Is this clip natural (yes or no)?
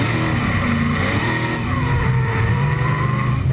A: yes